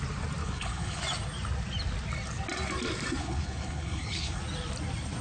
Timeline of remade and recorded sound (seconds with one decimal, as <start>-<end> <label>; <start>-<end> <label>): 0.0-0.4 recorded; 0.4-1.0 remade; 1.0-3.2 recorded; 3.2-4.4 remade; 4.4-5.2 recorded